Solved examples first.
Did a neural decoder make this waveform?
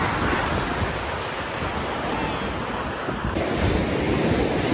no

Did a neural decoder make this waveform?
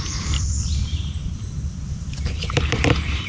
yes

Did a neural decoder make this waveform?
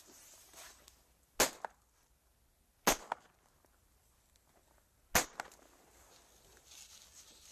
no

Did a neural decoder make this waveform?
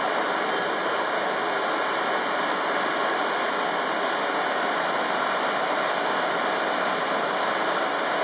no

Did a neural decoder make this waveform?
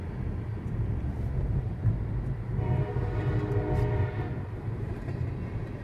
no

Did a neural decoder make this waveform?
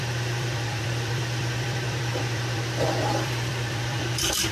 yes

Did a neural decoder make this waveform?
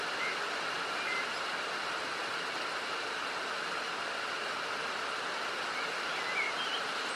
no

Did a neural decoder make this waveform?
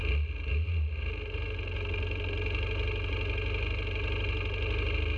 no